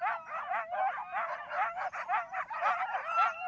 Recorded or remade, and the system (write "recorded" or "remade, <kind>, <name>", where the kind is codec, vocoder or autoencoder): recorded